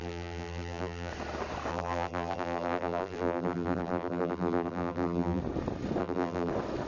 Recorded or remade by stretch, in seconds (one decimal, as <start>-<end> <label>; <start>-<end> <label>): 0.0-1.1 remade; 1.1-1.7 recorded; 1.7-5.4 remade; 5.4-6.0 recorded; 6.0-6.5 remade; 6.5-6.9 recorded